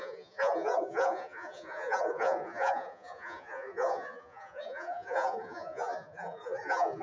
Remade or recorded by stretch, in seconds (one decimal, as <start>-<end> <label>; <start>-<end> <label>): 0.0-7.0 remade